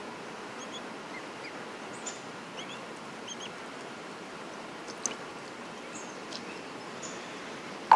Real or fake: real